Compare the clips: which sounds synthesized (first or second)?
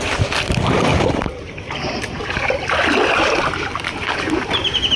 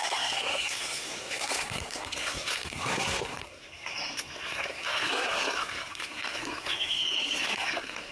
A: second